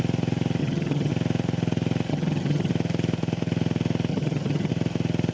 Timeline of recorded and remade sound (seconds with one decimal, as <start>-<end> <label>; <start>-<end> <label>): 0.0-0.6 recorded; 0.6-1.1 remade; 1.1-2.1 recorded; 2.1-2.7 remade; 2.7-4.1 recorded; 4.1-4.7 remade; 4.7-5.3 recorded